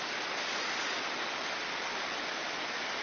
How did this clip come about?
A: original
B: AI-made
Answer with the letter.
A